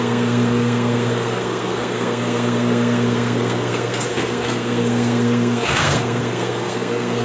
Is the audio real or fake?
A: fake